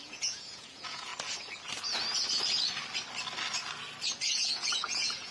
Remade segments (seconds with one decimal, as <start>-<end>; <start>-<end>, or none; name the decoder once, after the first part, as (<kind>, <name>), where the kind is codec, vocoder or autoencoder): 0.0-1.1 (vocoder, Vocos); 4.3-5.3